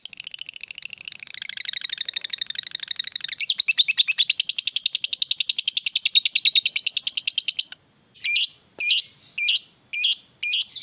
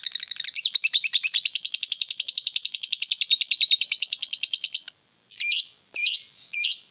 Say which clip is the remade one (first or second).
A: second